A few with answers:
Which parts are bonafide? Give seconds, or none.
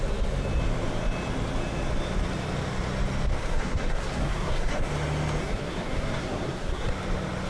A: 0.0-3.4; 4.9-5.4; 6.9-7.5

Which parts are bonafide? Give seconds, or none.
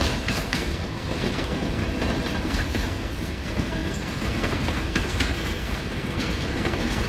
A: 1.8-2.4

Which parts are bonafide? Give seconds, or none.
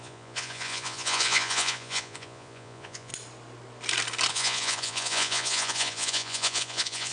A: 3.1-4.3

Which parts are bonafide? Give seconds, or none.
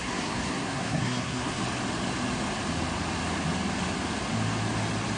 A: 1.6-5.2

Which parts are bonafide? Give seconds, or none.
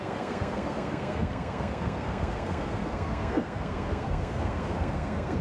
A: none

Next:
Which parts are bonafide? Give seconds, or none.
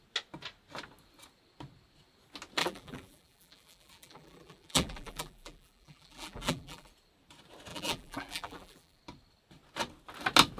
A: 0.0-2.6; 6.9-7.7; 9.0-10.6